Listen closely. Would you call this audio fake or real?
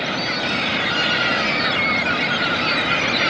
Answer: real